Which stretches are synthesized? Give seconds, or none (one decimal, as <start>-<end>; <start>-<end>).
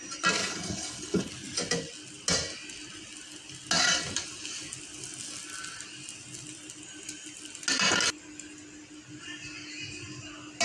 0.4-1.3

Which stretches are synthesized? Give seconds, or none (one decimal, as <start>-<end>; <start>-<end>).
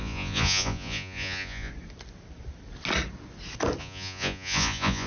0.0-1.7; 3.8-5.1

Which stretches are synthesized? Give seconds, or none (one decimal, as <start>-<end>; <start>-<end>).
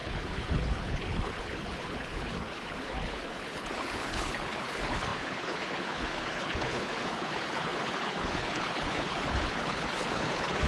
0.0-10.7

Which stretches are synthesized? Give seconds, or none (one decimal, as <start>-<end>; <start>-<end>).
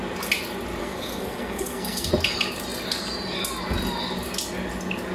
0.8-2.1